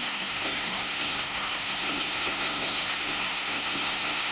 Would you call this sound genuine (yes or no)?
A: no